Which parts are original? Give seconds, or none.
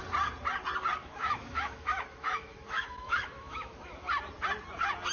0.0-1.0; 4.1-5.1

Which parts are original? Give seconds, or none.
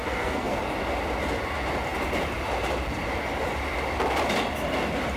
0.6-5.2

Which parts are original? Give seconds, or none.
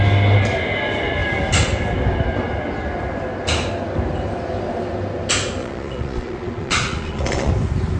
0.0-5.6; 7.5-8.0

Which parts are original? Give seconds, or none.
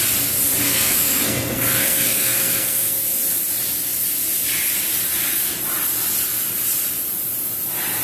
0.0-0.7; 3.0-8.0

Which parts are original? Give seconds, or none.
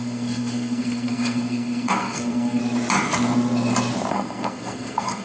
2.6-4.1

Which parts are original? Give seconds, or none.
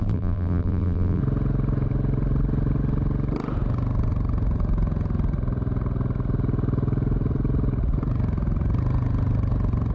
1.2-9.9